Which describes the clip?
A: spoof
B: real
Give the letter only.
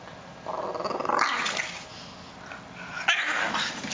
B